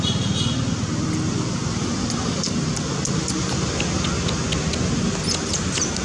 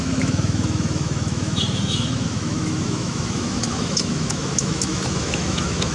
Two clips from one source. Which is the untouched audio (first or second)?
first